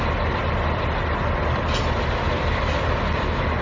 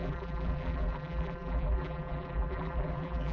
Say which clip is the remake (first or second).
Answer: second